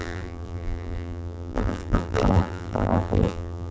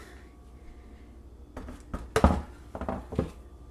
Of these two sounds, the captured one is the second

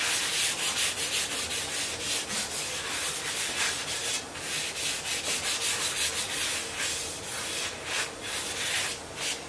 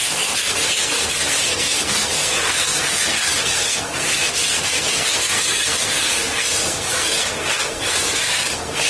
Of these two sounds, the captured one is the first